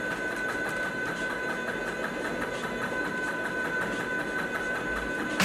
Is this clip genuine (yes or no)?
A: yes